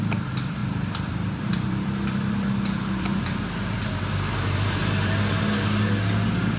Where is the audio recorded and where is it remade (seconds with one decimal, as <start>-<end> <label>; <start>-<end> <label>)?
0.0-0.6 recorded; 0.6-3.2 remade; 3.2-6.6 recorded